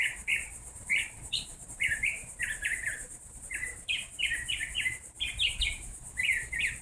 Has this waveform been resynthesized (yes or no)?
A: yes